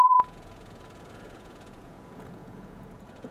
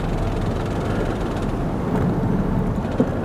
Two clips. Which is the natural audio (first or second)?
second